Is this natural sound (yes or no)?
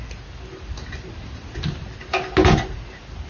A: yes